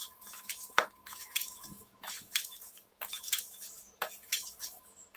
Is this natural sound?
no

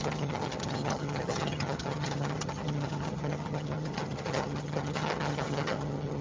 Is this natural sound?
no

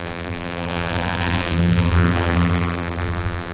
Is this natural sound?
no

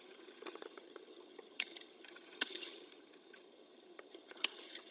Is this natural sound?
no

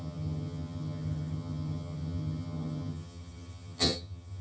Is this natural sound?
no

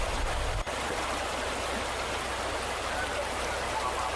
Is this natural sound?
yes